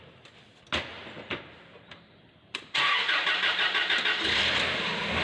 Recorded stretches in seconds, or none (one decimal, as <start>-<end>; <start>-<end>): 0.0-0.9; 4.0-5.2